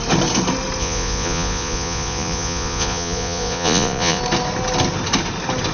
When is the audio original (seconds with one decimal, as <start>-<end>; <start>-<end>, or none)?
0.0-0.8; 4.2-5.7